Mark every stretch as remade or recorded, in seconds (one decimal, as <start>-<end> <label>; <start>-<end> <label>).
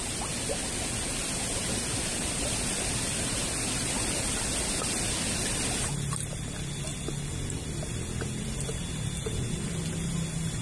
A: 0.0-10.6 recorded